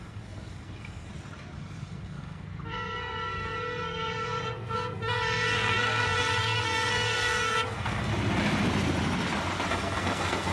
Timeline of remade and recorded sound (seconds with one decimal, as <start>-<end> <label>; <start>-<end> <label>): 0.0-1.1 remade; 1.1-1.6 recorded; 1.6-8.1 remade; 8.1-9.7 recorded; 9.7-10.5 remade